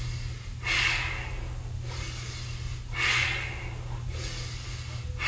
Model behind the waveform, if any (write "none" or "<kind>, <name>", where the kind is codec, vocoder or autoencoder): none